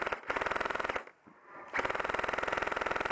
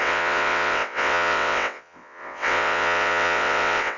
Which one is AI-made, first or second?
second